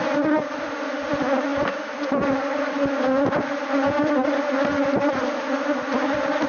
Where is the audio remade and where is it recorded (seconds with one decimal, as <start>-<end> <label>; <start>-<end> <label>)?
0.0-6.5 recorded